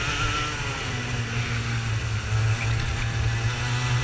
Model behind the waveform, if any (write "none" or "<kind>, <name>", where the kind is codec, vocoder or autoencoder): none